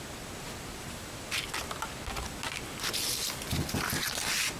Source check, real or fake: real